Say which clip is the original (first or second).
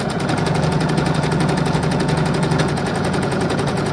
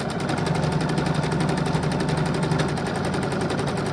second